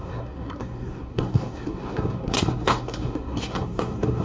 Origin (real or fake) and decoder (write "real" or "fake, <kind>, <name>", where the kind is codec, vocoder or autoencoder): fake, codec, SNAC